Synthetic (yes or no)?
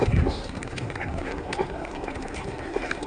yes